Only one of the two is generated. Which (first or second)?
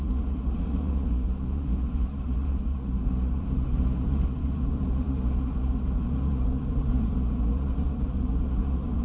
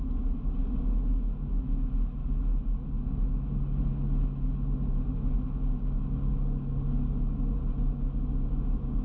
first